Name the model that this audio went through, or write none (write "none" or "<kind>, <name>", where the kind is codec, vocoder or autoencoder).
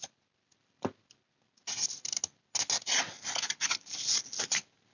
none